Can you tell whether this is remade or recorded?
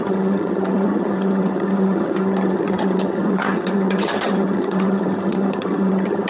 remade